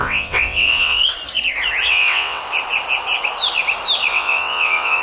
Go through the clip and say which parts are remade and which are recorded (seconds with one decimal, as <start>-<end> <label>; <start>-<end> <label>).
0.0-1.0 remade; 1.0-1.9 recorded; 1.9-2.4 remade; 2.4-4.1 recorded; 4.1-5.0 remade